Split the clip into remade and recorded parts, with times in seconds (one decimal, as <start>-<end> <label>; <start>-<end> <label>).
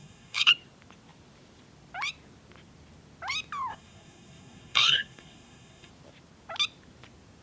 0.0-0.5 remade; 0.5-3.7 recorded; 3.7-5.9 remade; 5.9-7.4 recorded